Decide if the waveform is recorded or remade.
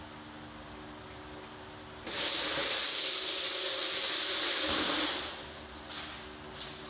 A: recorded